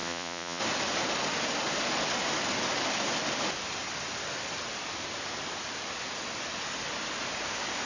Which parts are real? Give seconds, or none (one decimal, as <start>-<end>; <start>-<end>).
0.6-7.9